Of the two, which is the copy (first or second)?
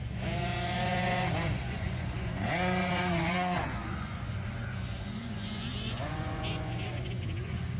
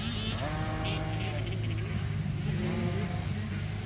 first